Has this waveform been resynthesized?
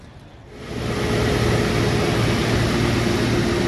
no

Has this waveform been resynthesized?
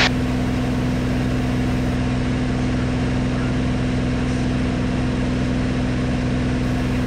no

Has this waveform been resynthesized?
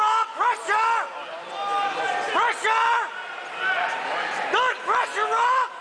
no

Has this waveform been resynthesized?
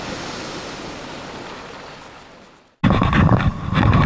no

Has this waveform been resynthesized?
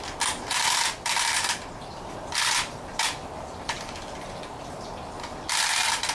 no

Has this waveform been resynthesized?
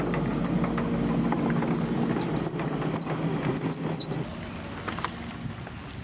no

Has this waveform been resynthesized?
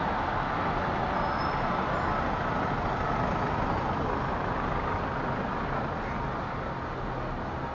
no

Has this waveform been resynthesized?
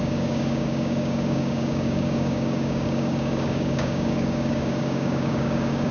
yes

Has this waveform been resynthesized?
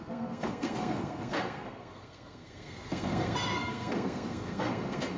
yes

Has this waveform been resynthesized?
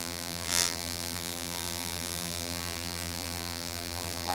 yes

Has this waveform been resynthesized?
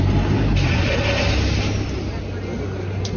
no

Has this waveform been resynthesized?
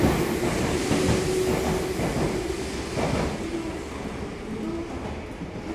no